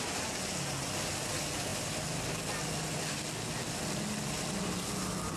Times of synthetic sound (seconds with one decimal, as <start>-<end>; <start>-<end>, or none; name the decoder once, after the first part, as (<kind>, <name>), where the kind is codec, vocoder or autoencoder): none